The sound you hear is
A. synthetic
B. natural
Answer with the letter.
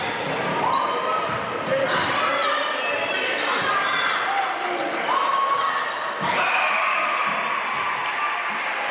B